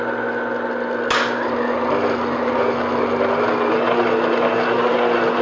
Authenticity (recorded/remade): recorded